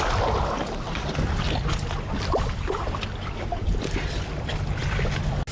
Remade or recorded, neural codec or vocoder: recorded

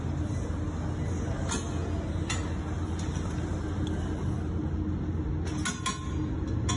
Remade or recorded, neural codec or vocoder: recorded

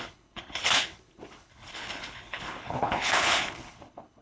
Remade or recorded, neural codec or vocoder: remade, codec, HILCodec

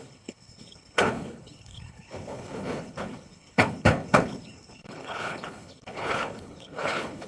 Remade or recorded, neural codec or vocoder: remade, codec, HILCodec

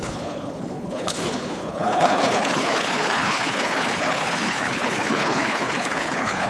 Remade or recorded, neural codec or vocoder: remade, codec, HILCodec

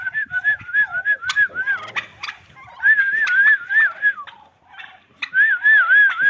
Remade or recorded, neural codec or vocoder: recorded